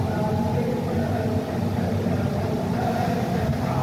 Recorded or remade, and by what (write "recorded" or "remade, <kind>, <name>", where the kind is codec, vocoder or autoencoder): recorded